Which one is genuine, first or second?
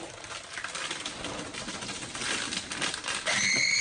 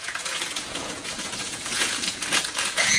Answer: first